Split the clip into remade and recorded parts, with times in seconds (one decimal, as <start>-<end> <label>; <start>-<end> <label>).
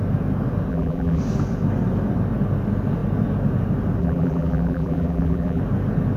0.0-0.7 recorded; 0.7-1.2 remade; 1.2-4.0 recorded; 4.0-5.6 remade; 5.6-6.2 recorded